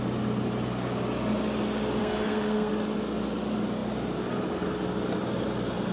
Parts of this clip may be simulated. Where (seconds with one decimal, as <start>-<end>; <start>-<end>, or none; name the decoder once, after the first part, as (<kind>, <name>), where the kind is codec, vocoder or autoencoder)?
2.0-2.7 (codec, SNAC)